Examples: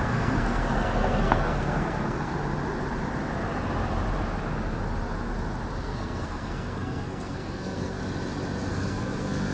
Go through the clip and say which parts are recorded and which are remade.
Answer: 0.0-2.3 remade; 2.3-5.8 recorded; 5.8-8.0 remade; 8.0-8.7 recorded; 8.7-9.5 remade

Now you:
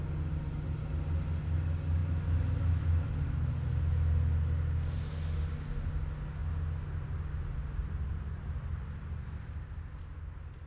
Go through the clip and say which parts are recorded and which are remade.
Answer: 0.0-10.7 recorded

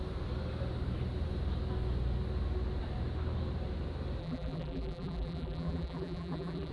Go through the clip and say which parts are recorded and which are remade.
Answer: 0.0-4.2 recorded; 4.2-6.7 remade

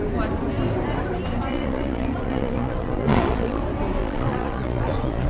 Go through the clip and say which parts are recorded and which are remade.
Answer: 0.0-1.5 recorded; 1.5-3.6 remade; 3.6-4.0 recorded; 4.0-5.3 remade

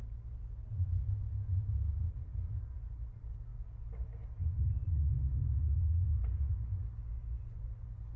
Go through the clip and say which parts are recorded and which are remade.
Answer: 0.0-8.2 recorded

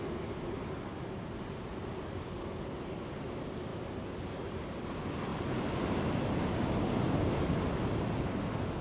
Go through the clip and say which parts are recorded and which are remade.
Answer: 0.0-8.8 recorded

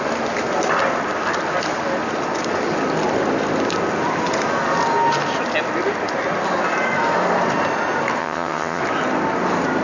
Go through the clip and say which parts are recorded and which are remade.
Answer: 0.0-8.2 recorded; 8.2-8.8 remade; 8.8-9.8 recorded

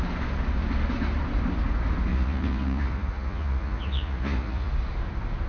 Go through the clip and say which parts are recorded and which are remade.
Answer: 0.0-2.1 recorded; 2.1-4.7 remade; 4.7-5.5 recorded